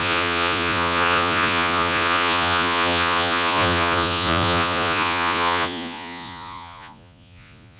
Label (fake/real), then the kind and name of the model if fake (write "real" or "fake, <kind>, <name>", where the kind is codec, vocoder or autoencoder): fake, vocoder, Vocos